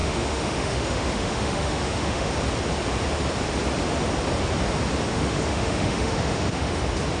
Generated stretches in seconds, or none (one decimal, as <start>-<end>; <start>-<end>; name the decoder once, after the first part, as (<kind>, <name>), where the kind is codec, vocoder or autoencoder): 0.0-2.3 (autoencoder, DAC-VAE); 5.1-6.8